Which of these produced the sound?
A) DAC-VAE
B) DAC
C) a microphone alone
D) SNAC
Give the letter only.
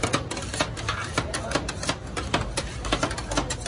C